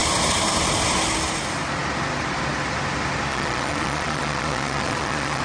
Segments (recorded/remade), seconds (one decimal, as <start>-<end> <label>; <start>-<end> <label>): 0.0-3.3 recorded; 3.3-5.4 remade